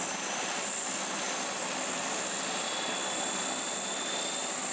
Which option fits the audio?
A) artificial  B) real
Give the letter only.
B